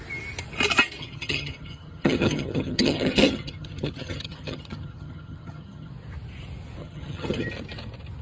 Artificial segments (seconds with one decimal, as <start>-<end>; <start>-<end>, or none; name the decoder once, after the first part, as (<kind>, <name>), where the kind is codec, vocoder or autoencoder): 1.0-5.9 (vocoder, HiFi-GAN); 6.8-7.5